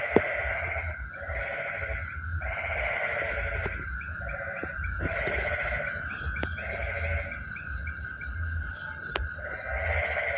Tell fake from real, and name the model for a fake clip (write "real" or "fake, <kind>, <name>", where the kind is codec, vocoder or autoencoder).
real